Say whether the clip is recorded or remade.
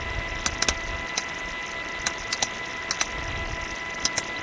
recorded